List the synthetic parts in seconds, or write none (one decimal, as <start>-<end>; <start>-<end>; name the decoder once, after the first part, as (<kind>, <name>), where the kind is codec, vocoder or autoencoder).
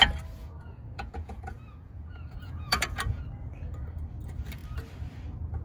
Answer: 0.4-3.2 (vocoder, Vocos)